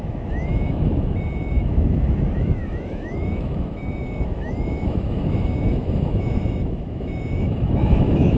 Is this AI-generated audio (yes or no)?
yes